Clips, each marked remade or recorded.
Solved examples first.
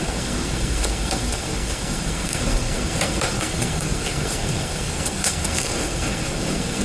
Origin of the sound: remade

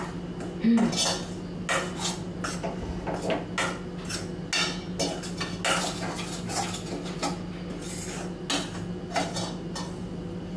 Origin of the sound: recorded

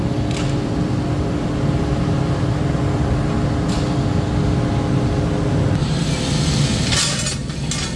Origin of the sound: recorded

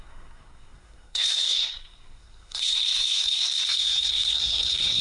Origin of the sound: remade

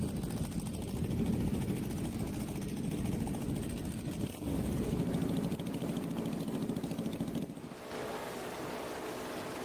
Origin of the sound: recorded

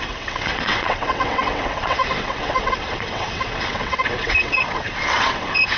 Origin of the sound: remade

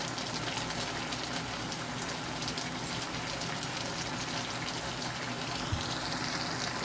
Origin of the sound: recorded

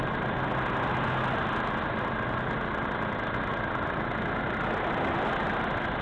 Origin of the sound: recorded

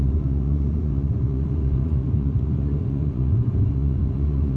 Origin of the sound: remade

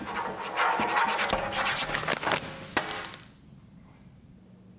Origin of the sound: recorded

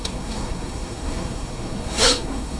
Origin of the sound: remade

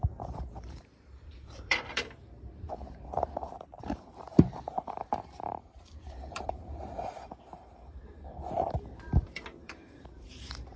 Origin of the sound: remade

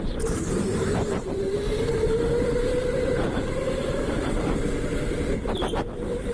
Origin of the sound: remade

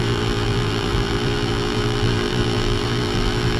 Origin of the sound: remade